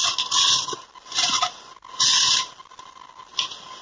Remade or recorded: recorded